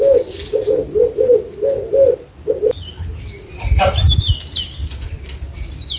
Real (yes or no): yes